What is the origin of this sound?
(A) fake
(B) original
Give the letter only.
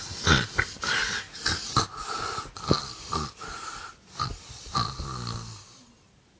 B